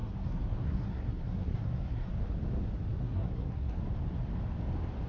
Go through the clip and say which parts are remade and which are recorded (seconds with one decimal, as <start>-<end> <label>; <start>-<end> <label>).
0.0-2.1 remade; 2.1-3.0 recorded; 3.0-3.8 remade; 3.8-5.1 recorded